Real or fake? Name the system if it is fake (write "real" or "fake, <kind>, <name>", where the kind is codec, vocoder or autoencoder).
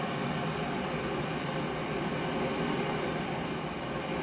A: real